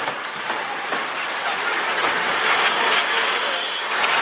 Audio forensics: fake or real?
real